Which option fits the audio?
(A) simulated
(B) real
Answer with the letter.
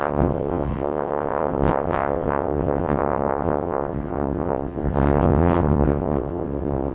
A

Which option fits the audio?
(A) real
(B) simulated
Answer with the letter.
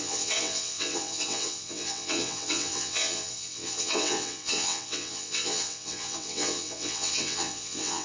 B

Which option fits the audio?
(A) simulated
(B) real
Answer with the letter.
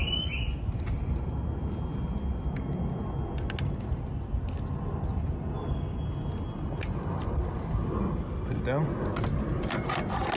B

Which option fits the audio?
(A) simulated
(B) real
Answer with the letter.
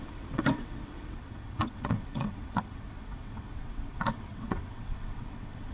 A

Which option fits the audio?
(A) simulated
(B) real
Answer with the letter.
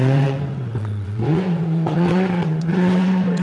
A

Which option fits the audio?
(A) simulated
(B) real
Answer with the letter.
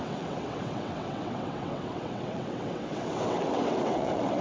A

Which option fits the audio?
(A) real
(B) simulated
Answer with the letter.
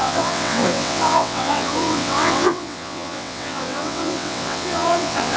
B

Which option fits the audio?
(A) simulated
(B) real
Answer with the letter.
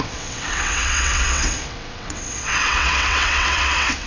A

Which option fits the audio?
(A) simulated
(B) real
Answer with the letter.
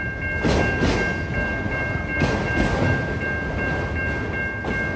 B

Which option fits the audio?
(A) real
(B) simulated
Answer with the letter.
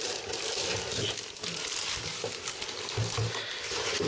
A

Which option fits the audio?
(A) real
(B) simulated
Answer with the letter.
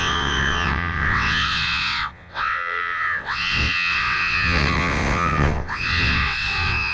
B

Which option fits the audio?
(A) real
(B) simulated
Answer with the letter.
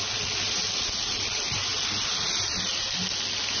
A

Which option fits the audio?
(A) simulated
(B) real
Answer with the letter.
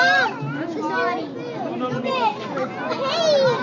B